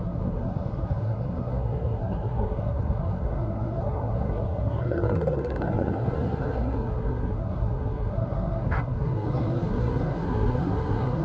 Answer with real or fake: fake